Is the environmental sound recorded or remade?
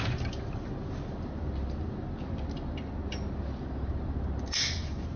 recorded